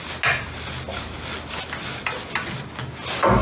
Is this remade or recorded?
recorded